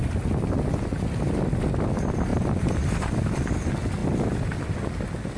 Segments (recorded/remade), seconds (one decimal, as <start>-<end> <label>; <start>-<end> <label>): 0.0-5.4 recorded